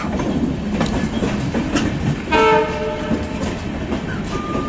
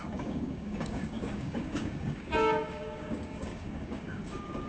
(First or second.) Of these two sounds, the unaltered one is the first